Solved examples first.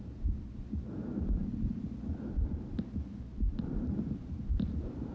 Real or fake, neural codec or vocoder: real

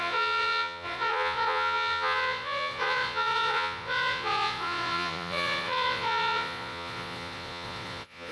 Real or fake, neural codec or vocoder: fake, vocoder, Vocos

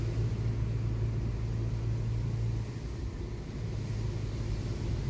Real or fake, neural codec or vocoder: real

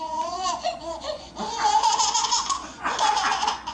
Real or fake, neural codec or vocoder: fake, vocoder, Vocos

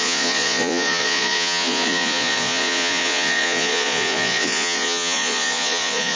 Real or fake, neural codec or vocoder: fake, vocoder, Vocos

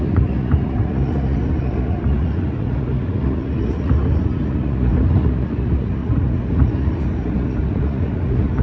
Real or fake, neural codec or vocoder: fake, vocoder, Vocos